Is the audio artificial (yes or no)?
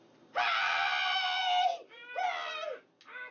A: no